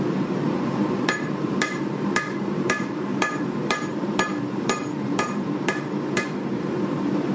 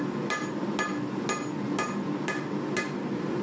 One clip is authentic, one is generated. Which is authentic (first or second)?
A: second